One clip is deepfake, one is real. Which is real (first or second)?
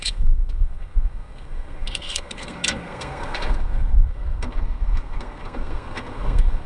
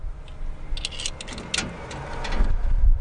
second